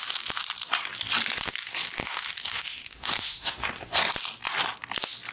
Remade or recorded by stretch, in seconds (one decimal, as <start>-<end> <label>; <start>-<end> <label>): 0.0-2.0 recorded; 2.0-3.9 remade; 3.9-5.3 recorded